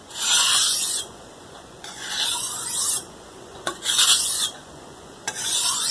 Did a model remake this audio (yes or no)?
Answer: yes